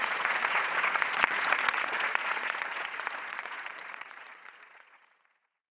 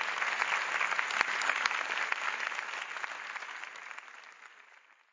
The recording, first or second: second